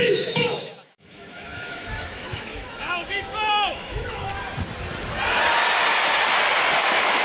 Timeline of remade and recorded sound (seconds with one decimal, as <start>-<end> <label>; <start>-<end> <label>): 0.0-4.3 remade; 4.3-6.8 recorded; 6.8-7.2 remade